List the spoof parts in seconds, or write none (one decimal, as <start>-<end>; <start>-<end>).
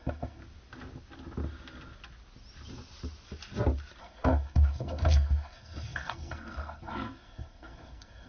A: 0.0-0.4; 4.0-8.3